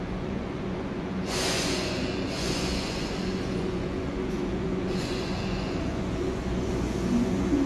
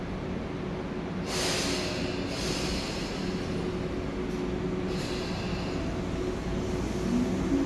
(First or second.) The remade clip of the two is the first